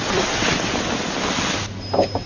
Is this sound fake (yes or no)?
no